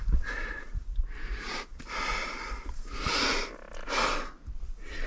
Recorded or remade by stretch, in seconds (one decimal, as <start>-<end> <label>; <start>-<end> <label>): 0.0-5.1 recorded